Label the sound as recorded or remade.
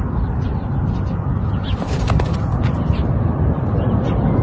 recorded